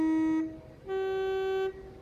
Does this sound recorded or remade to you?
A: recorded